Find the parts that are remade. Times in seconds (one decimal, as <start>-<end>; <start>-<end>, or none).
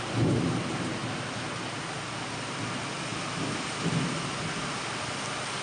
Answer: none